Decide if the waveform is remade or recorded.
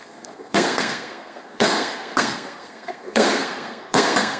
remade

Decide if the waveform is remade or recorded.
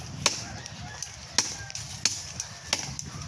recorded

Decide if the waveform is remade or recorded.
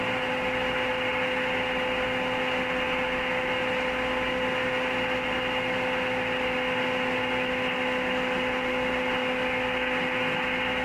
recorded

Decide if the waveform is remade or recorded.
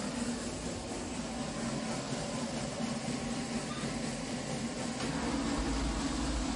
recorded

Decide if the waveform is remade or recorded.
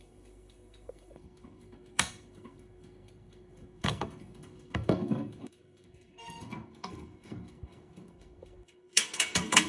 remade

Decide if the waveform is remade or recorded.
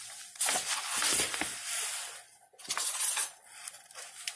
recorded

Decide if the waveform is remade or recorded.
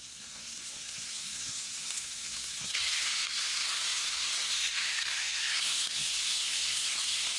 remade